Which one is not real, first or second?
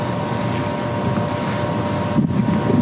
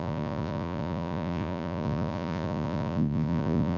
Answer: second